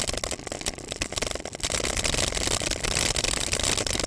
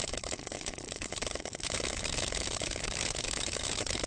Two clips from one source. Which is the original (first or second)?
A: first